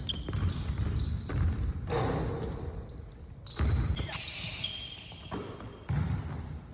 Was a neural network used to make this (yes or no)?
yes